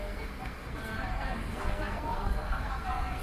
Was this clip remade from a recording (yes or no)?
yes